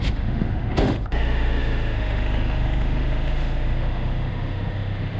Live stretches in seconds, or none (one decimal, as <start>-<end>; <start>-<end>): none